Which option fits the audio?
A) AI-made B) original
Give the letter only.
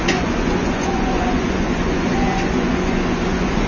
A